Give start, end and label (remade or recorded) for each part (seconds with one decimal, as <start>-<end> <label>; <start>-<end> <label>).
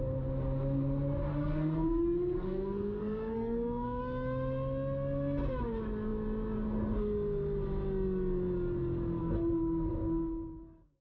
0.0-1.3 recorded; 1.3-4.0 remade; 4.0-11.0 recorded